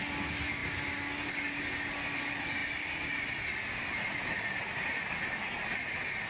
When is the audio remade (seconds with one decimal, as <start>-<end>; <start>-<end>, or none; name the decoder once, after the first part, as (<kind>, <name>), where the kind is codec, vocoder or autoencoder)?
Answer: none